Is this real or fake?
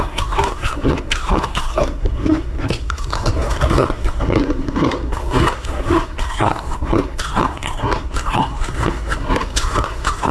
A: fake